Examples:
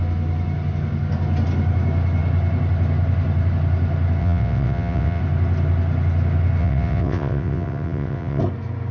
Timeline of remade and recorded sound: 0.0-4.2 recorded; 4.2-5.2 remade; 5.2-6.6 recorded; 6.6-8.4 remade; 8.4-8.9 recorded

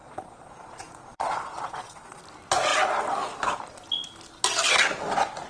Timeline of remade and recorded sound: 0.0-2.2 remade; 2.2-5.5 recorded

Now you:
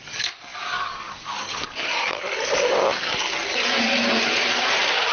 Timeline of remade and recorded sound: 0.0-0.5 recorded; 0.5-2.2 remade; 2.2-5.1 recorded

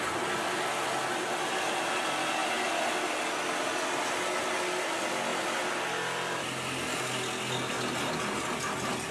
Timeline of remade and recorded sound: 0.0-9.1 recorded

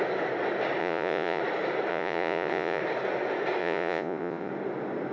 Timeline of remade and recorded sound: 0.0-0.8 recorded; 0.8-1.4 remade; 1.4-1.9 recorded; 1.9-2.8 remade; 2.8-3.6 recorded; 3.6-4.5 remade; 4.5-5.1 recorded

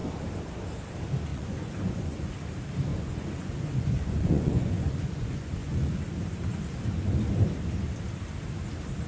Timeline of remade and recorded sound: 0.0-1.3 recorded; 1.3-2.3 remade; 2.3-2.9 recorded; 2.9-6.0 remade; 6.0-9.1 recorded

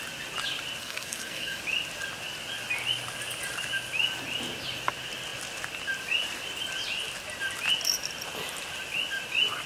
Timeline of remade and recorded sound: 0.0-0.8 recorded; 0.8-1.6 remade; 1.6-9.7 recorded

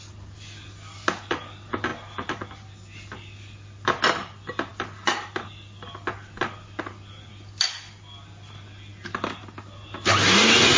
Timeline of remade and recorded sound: 0.0-10.8 recorded